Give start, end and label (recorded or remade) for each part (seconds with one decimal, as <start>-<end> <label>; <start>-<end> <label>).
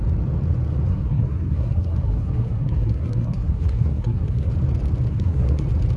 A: 0.0-0.9 recorded; 0.9-4.5 remade; 4.5-5.1 recorded; 5.1-5.6 remade; 5.6-6.0 recorded